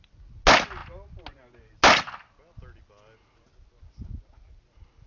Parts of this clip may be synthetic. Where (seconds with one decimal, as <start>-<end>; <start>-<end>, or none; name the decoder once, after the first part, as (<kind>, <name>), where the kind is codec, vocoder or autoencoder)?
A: none